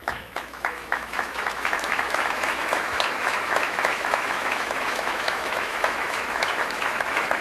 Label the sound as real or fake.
fake